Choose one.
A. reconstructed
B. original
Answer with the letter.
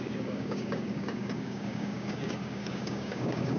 A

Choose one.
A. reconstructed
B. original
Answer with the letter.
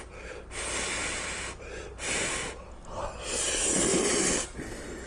B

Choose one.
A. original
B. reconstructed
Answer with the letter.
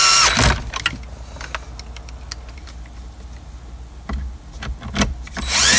A